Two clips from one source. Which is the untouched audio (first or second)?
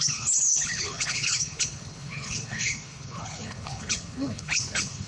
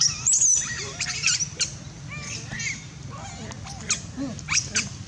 second